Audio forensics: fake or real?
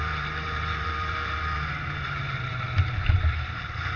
fake